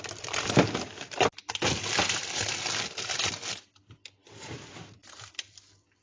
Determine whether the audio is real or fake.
fake